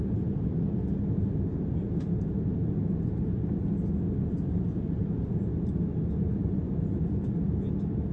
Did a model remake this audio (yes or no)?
no